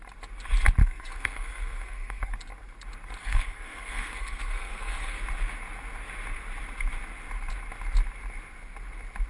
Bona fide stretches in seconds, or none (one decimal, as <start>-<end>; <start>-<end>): 0.0-0.8; 2.3-3.2; 5.2-9.3